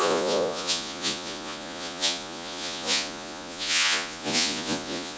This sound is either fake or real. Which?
fake